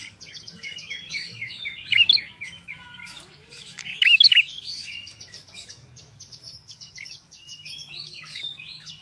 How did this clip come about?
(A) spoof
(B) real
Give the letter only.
A